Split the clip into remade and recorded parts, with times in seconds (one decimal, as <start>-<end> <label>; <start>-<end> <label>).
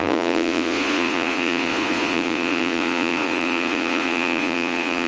0.0-5.1 remade